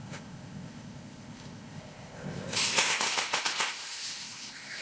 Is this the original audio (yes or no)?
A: no